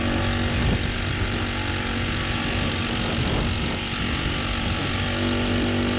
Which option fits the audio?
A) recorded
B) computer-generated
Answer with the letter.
A